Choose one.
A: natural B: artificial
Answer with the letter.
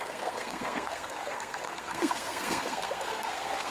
B